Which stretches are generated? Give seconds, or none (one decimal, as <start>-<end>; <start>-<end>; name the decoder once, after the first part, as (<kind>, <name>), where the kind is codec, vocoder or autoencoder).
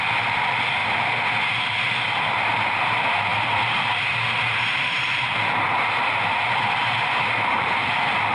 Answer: 3.3-7.7 (vocoder, BigVGAN v2)